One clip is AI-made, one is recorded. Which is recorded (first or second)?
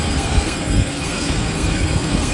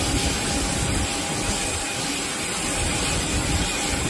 second